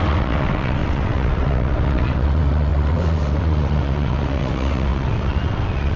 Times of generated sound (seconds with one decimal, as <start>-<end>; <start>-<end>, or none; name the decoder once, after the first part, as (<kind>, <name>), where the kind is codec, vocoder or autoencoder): 0.0-6.0 (vocoder, WaveNeXt)